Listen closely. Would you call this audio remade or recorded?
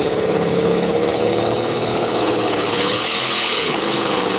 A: remade